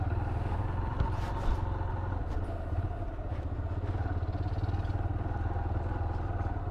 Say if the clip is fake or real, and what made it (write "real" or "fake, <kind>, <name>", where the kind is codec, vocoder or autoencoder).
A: real